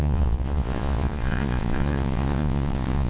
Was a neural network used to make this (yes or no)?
yes